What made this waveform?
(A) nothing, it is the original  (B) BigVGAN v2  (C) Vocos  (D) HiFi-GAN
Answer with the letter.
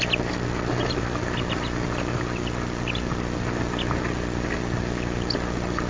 A